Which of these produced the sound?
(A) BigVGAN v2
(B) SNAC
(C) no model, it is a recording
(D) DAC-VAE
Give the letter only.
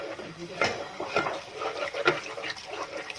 C